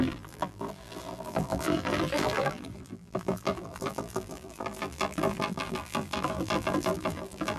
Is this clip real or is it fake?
fake